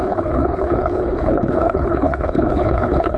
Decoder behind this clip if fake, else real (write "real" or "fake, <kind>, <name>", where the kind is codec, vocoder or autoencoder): fake, codec, HILCodec